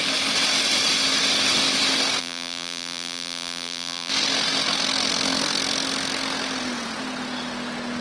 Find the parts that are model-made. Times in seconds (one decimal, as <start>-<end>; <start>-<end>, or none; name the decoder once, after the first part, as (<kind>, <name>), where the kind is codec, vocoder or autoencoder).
2.2-4.1 (vocoder, BigVGAN v2)